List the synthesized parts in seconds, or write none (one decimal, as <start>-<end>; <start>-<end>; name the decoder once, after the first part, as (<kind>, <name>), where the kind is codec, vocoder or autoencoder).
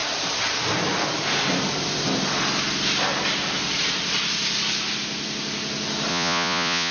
6.1-6.9 (vocoder, Vocos)